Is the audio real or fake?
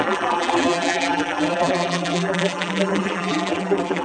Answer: fake